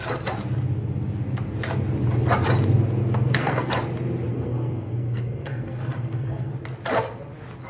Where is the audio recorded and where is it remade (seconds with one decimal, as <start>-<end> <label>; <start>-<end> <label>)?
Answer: 0.0-3.0 recorded; 3.0-3.8 remade; 3.8-4.3 recorded; 4.3-6.5 remade; 6.5-7.7 recorded